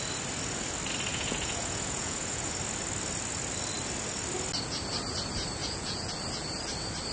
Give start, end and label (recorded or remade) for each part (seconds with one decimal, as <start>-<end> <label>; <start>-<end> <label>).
0.0-1.1 recorded; 1.1-2.5 remade; 2.5-5.6 recorded; 5.6-6.1 remade; 6.1-7.1 recorded